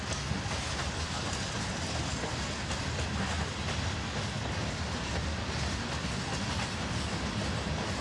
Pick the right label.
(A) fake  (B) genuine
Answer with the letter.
B